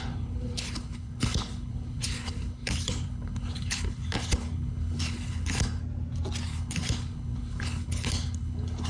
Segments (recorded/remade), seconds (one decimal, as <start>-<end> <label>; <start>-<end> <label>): 0.0-5.8 remade; 5.8-6.5 recorded; 6.5-8.9 remade